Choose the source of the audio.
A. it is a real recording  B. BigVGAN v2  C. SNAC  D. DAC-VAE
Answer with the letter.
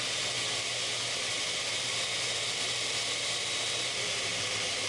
A